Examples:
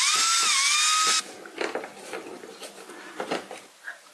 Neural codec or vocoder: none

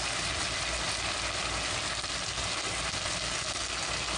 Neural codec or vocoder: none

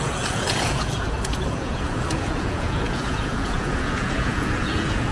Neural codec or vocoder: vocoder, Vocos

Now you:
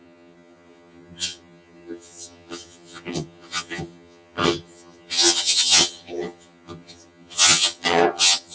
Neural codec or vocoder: vocoder, HiFi-GAN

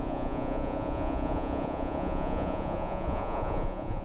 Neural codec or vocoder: vocoder, Vocos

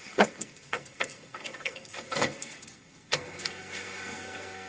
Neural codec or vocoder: codec, SNAC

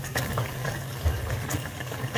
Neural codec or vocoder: codec, DAC